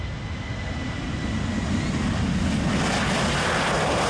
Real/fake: real